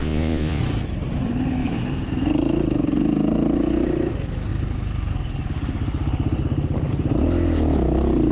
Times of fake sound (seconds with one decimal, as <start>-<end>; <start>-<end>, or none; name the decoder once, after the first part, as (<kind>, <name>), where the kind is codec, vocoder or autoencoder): 0.0-0.6 (vocoder, Vocos)